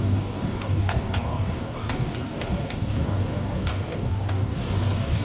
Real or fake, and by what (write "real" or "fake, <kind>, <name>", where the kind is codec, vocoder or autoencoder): fake, codec, DAC